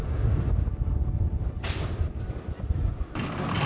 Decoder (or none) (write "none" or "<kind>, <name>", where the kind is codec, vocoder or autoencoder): none